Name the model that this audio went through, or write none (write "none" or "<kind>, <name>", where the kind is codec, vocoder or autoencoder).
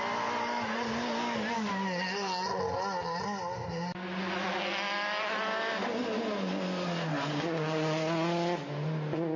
none